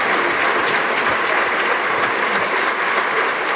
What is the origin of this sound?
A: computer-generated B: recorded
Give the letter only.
B